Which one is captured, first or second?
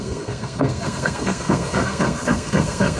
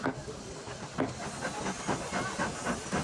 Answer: second